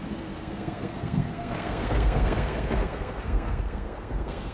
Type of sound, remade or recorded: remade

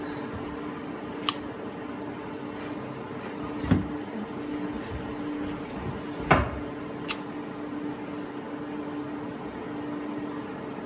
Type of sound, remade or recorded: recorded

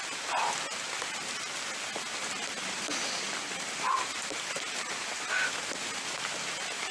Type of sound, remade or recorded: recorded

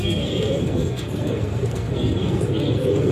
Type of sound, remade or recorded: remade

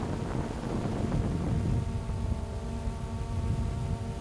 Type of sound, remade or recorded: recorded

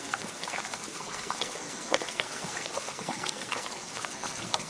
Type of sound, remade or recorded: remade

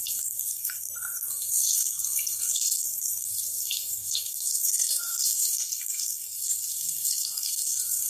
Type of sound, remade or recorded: remade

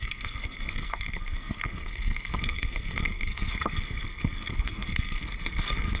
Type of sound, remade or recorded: remade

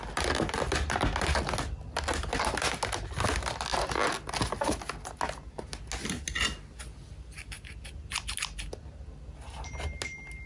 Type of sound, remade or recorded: recorded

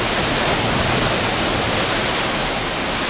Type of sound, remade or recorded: recorded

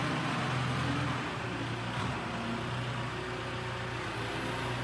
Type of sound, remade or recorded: recorded